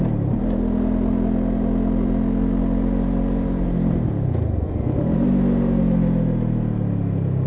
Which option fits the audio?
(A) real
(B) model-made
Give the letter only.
A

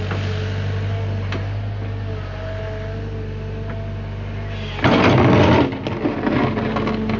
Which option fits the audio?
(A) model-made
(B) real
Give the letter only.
B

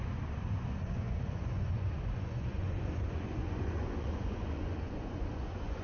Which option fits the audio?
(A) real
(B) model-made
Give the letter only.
B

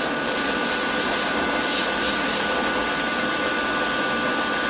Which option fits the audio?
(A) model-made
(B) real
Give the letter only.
B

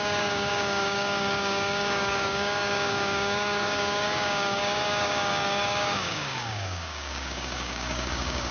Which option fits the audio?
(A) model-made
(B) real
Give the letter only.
A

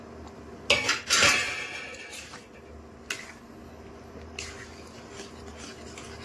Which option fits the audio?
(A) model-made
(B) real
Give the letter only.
B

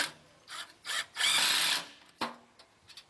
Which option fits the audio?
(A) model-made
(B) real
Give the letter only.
B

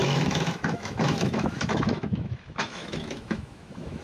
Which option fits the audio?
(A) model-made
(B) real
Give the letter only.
A